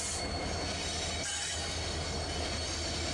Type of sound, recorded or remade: recorded